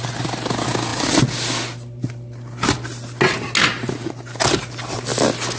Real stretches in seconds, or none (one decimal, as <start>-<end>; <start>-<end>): 0.0-5.6